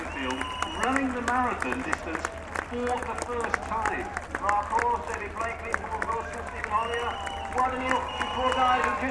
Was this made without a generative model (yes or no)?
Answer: yes